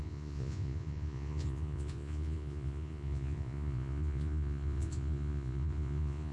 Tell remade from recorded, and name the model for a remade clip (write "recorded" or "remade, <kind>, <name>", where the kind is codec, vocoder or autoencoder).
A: remade, vocoder, Vocos